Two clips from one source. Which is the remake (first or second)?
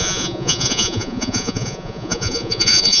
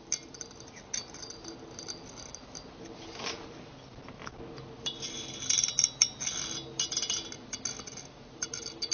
first